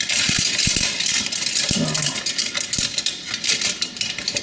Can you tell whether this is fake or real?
real